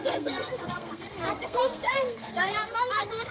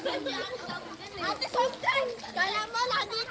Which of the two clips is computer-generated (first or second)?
first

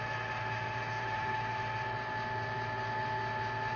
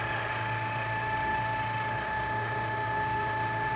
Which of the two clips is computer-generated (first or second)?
second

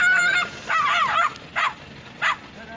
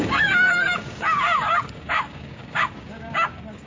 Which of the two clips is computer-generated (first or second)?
second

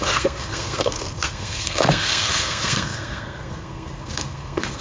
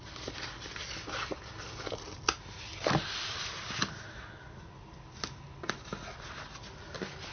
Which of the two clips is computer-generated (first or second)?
first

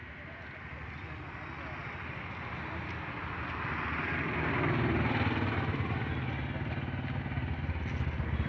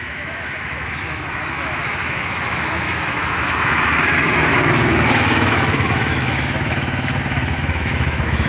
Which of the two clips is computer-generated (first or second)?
second